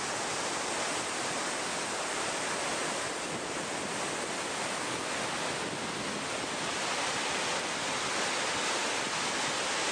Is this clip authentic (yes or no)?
yes